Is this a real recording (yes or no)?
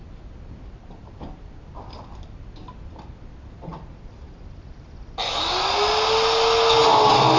yes